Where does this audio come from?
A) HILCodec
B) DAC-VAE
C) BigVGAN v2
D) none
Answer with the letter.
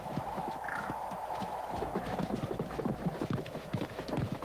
B